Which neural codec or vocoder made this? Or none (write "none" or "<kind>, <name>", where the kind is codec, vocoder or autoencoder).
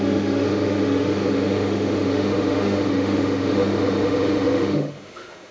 autoencoder, DAC-VAE